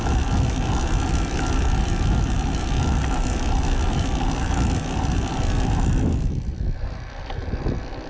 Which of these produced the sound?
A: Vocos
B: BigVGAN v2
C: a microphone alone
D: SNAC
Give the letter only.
C